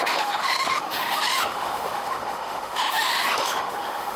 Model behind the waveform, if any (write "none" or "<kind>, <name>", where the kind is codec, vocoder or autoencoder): autoencoder, DAC-VAE